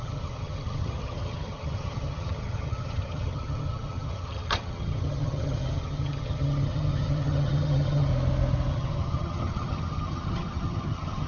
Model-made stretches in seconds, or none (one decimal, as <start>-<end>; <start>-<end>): 0.0-8.1; 8.7-11.3